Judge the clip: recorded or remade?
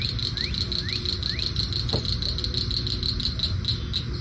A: recorded